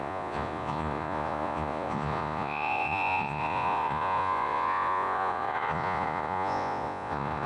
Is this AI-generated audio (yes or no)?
yes